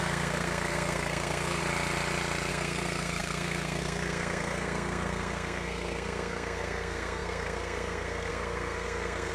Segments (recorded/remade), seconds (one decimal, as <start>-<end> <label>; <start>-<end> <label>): 0.0-1.6 remade; 1.6-2.5 recorded; 2.5-9.3 remade